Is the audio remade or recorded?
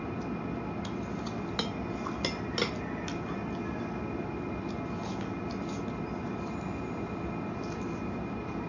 recorded